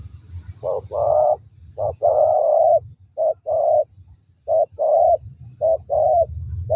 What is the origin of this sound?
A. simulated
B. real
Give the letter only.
B